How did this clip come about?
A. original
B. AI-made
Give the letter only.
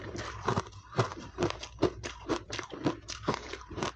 B